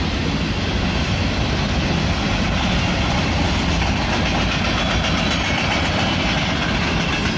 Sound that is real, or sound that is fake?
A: real